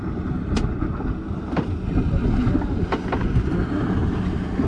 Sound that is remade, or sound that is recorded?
recorded